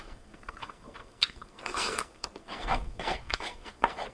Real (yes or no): no